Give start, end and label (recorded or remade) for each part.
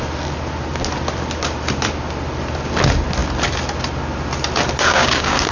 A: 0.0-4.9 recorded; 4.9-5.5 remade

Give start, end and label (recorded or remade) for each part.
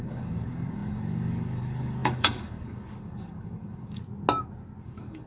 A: 0.0-4.0 remade; 4.0-4.8 recorded; 4.8-5.3 remade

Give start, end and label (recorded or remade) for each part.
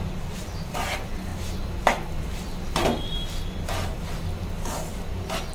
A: 0.0-5.5 recorded